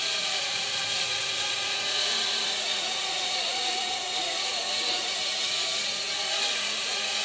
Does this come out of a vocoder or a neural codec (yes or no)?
yes